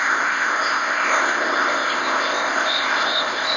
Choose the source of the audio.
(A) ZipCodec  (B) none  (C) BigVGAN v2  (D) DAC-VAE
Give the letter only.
A